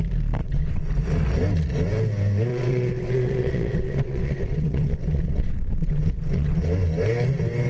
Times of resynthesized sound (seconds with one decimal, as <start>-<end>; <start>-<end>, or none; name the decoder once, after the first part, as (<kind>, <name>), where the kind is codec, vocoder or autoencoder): 0.4-0.9 (vocoder, WaveNeXt); 2.5-6.6